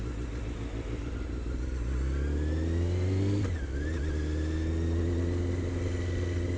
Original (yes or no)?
yes